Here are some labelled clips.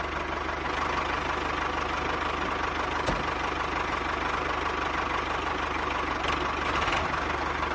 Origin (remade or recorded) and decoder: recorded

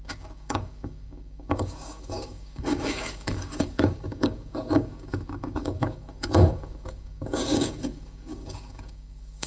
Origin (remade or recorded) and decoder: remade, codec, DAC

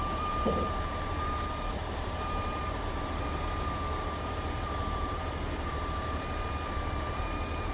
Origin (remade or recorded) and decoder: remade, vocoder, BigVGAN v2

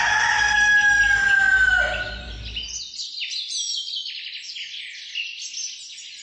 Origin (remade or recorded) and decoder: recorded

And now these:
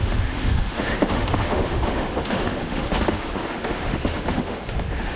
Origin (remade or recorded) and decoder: remade, autoencoder, DAC-VAE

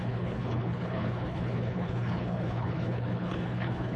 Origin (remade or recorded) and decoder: remade, codec, HILCodec